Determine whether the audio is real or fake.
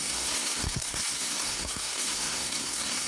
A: fake